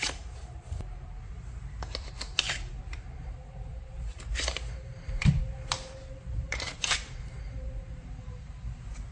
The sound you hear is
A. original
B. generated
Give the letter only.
B